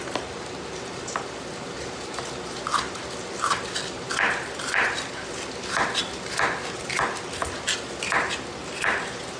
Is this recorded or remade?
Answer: recorded